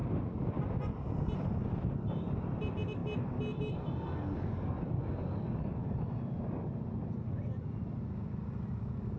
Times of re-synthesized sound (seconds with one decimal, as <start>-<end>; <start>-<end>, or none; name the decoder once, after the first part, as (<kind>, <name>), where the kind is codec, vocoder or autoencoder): none